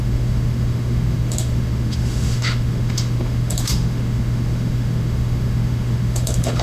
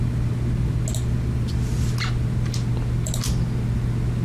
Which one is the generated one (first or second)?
first